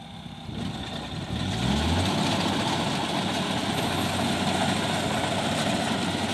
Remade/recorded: recorded